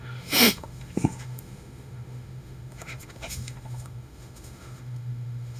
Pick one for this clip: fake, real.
fake